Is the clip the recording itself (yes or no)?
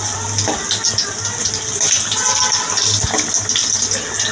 yes